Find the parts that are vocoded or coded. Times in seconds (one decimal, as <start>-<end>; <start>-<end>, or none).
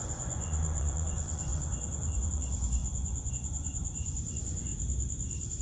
0.0-4.7